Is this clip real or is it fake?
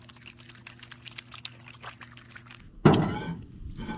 real